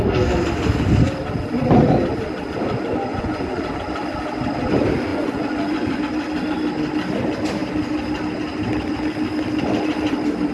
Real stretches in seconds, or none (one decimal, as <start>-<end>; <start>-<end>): 0.0-3.1; 3.6-5.1; 6.0-10.5